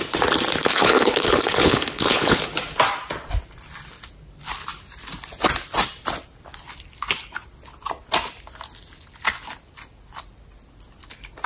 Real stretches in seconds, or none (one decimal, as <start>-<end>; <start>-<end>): 0.0-0.7; 2.4-11.5